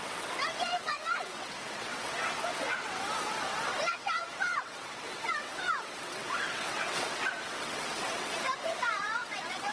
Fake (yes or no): yes